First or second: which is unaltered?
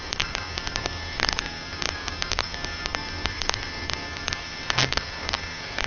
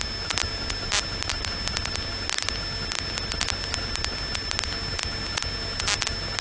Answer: second